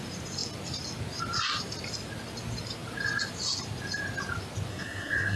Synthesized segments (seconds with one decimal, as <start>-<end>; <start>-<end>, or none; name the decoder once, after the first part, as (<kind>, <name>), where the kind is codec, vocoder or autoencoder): 4.7-5.4 (codec, SNAC)